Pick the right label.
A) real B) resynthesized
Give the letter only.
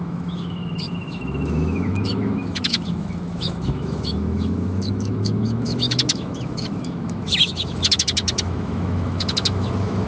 B